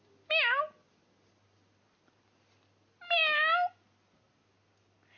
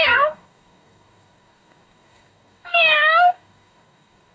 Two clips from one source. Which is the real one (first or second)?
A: first